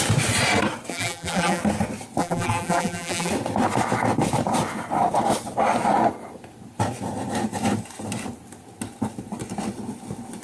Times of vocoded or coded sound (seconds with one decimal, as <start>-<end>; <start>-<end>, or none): 0.9-1.6; 2.2-3.3